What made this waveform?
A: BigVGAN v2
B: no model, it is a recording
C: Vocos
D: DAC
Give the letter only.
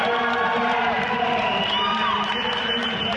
A